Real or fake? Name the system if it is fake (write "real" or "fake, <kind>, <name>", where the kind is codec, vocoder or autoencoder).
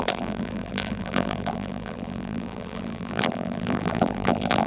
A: fake, vocoder, BigVGAN v2